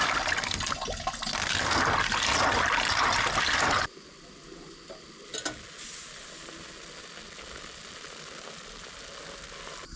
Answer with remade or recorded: recorded